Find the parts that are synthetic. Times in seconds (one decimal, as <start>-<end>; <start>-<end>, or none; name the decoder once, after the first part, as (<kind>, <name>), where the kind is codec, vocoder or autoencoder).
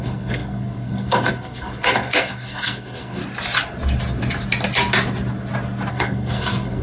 0.0-3.2 (codec, SNAC); 5.9-6.8